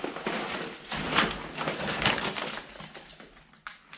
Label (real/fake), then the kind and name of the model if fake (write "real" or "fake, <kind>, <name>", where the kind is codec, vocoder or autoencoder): real